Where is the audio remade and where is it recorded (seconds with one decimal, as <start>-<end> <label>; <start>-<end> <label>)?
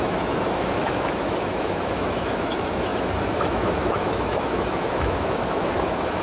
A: 0.0-6.2 remade